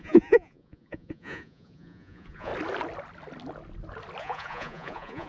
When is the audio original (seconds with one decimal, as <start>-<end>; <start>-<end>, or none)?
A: 2.5-4.2